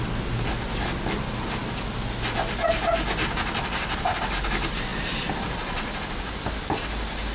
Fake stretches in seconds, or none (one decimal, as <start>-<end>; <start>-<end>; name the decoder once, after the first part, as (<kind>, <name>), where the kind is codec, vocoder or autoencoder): none